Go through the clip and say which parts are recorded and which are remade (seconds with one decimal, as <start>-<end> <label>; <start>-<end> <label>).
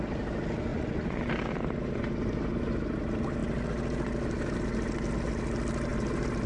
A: 0.0-0.7 recorded; 0.7-1.3 remade; 1.3-6.5 recorded